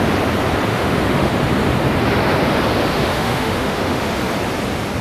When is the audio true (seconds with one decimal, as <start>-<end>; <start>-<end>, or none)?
0.0-0.7; 1.3-2.9; 4.1-5.0